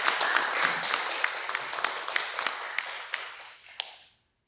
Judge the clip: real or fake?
real